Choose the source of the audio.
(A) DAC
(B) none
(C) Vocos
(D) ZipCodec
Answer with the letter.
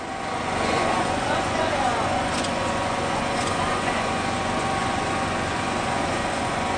C